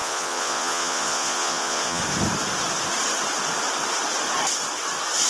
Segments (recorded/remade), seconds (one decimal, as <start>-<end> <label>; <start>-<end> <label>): 0.0-2.0 remade; 2.0-5.3 recorded